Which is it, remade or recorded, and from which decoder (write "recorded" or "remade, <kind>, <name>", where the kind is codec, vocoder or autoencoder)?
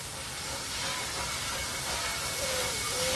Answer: recorded